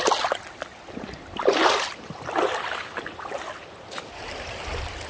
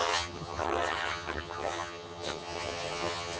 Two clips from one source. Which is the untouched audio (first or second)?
first